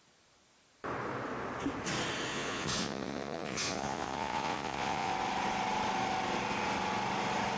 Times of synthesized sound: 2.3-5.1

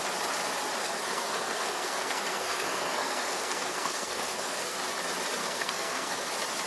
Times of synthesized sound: 0.8-4.8; 5.4-6.3

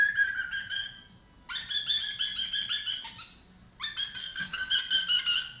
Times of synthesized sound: 4.2-4.7

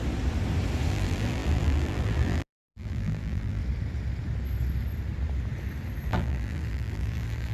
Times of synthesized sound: 0.9-3.6; 6.1-7.5